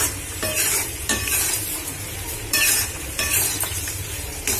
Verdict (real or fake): fake